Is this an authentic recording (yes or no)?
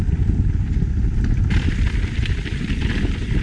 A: yes